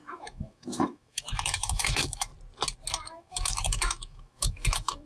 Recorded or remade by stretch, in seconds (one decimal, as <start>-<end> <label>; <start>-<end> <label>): 0.0-2.3 remade; 2.3-2.9 recorded; 2.9-5.1 remade